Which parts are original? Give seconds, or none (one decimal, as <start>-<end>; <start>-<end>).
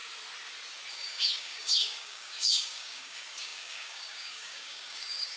0.0-0.9